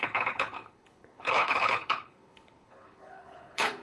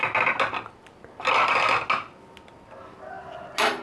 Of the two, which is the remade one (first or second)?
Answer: first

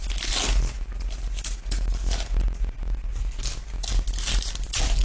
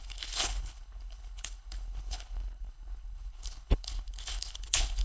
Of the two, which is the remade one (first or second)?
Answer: second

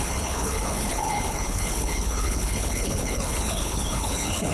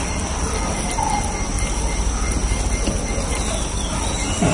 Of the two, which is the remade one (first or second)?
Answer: first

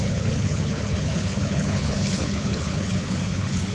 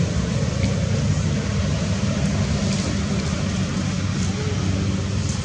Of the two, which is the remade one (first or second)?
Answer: first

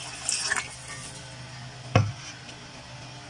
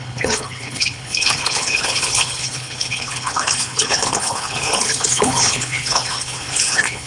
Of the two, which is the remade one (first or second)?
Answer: second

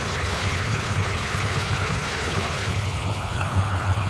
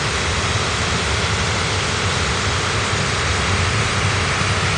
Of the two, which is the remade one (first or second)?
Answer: first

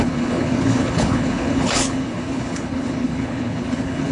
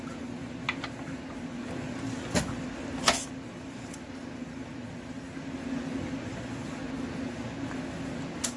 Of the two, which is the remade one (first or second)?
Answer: first